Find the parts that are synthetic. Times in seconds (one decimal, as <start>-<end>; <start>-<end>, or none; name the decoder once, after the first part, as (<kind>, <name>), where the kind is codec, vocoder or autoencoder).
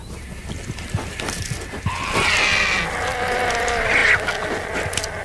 none